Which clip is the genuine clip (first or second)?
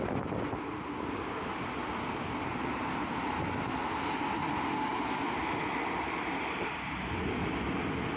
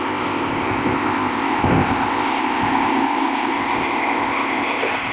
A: first